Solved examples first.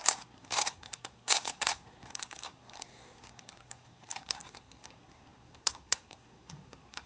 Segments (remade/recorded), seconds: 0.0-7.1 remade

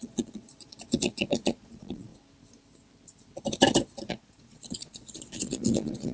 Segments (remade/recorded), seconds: 0.0-2.1 remade; 2.1-4.0 recorded; 4.0-6.1 remade

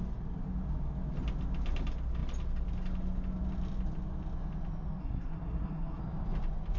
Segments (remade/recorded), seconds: 0.0-5.0 recorded; 5.0-6.0 remade; 6.0-6.8 recorded

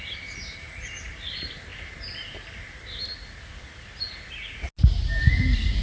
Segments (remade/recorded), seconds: 0.0-5.8 recorded